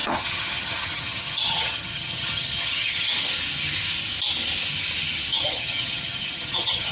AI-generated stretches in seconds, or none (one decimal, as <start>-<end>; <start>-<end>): 0.0-3.1; 5.3-6.9